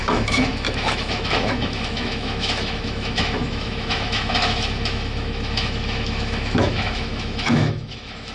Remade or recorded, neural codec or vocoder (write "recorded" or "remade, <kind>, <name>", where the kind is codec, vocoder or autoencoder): remade, autoencoder, DAC-VAE